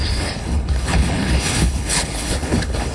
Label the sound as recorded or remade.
remade